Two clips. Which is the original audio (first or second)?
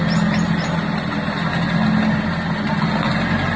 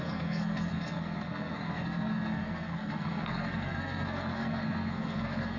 first